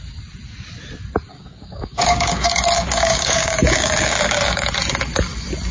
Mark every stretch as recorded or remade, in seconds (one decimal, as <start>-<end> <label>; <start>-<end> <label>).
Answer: 0.0-1.3 recorded; 1.3-4.7 remade; 4.7-5.7 recorded

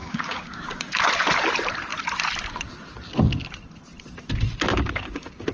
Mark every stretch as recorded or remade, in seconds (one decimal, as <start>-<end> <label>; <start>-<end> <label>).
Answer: 0.0-1.0 remade; 1.0-4.7 recorded; 4.7-5.5 remade

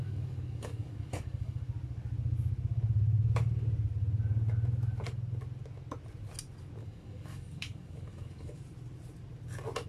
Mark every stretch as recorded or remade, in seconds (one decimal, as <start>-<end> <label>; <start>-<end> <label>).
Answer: 0.0-1.6 remade; 1.6-6.8 recorded; 6.8-8.6 remade; 8.6-9.9 recorded

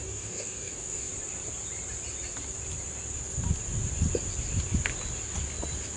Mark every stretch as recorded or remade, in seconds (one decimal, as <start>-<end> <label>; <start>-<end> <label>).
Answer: 0.0-1.1 remade; 1.1-6.0 recorded